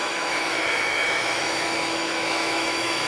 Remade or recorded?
remade